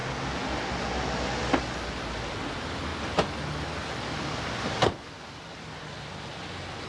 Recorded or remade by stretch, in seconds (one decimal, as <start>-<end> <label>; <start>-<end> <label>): 0.0-6.9 recorded